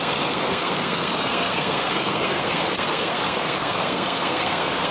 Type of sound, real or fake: fake